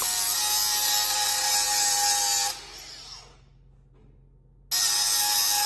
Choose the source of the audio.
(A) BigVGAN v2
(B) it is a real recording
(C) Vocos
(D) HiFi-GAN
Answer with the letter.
B